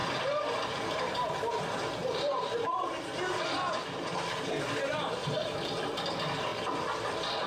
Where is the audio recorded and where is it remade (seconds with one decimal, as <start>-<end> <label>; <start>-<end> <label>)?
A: 0.0-1.5 remade; 1.5-2.0 recorded; 2.0-3.4 remade; 3.4-5.2 recorded; 5.2-6.1 remade; 6.1-7.5 recorded